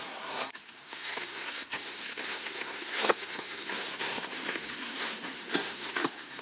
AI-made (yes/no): yes